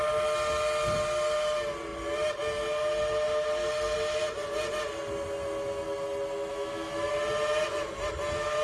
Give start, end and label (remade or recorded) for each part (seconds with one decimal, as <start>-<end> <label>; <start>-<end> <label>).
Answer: 0.0-6.5 recorded; 6.5-7.1 remade; 7.1-8.6 recorded